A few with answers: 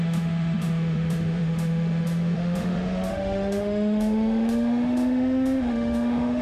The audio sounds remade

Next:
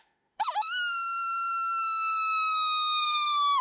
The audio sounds remade